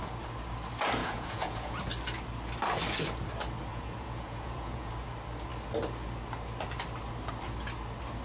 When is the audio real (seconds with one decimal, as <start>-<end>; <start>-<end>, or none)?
0.0-1.0; 1.8-3.7; 4.9-8.2